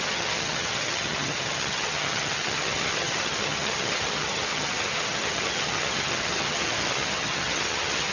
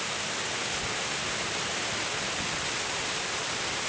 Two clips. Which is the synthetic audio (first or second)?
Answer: first